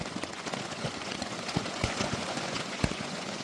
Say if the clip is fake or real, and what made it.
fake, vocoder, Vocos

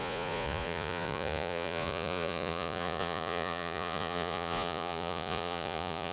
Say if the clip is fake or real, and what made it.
fake, vocoder, Vocos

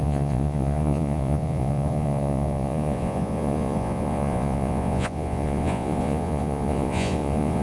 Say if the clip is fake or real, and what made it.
fake, vocoder, Vocos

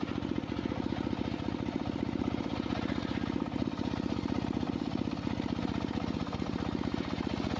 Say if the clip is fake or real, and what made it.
real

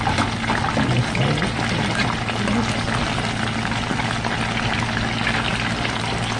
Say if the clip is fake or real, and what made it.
real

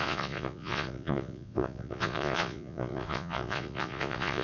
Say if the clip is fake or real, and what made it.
fake, vocoder, Vocos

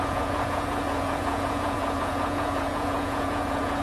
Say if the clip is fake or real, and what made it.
fake, vocoder, Vocos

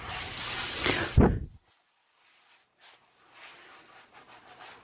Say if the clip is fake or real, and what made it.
real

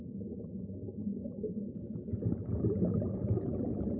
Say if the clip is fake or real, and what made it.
real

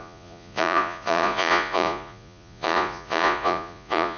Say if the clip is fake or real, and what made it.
fake, vocoder, Vocos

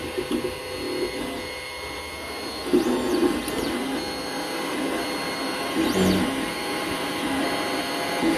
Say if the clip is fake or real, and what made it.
real